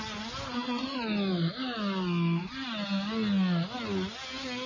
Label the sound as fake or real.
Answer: real